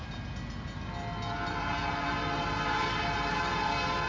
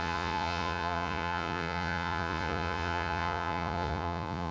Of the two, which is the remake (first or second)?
second